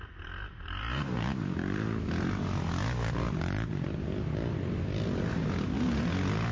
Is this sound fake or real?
real